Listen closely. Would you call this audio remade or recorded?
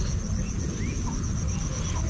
recorded